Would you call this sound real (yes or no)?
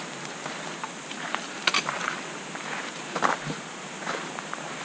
no